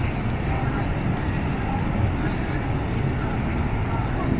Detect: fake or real real